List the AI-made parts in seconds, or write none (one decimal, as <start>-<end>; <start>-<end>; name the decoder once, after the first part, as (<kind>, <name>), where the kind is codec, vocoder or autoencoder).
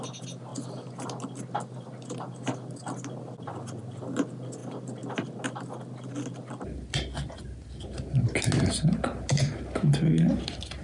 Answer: none